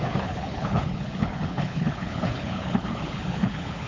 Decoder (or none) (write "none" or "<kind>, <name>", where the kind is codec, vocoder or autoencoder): codec, HILCodec